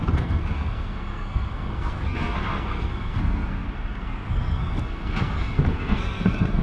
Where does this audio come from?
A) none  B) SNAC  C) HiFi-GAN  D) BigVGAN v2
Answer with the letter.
B